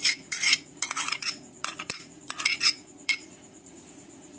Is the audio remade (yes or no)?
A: yes